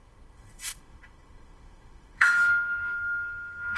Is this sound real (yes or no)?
no